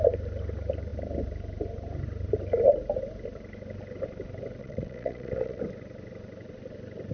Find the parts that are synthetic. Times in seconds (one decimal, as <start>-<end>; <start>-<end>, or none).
4.6-5.6